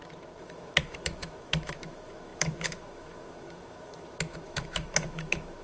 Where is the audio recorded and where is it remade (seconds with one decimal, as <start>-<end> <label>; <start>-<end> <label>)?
0.0-5.6 remade